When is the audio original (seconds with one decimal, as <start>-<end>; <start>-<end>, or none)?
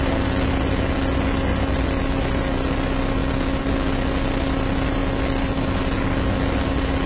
0.0-7.1